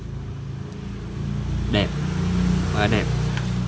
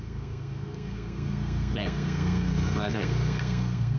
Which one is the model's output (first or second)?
second